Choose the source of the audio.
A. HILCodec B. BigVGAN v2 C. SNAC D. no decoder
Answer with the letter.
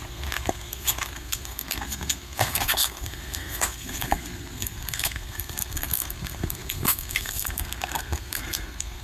C